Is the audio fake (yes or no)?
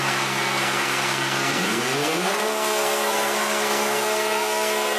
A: yes